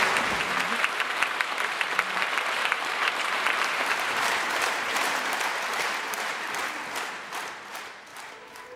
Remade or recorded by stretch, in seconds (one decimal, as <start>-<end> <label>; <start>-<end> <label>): 0.0-0.4 recorded; 0.4-5.3 remade; 5.3-5.7 recorded; 5.7-6.3 remade; 6.3-8.8 recorded